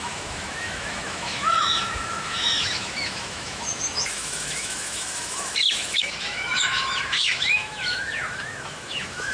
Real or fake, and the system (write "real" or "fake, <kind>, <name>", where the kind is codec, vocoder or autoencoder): fake, autoencoder, DAC-VAE